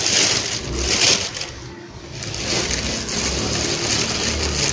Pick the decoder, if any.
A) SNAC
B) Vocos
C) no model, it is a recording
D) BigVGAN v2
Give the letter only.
C